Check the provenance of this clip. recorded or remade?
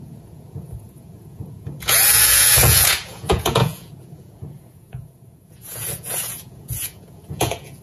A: remade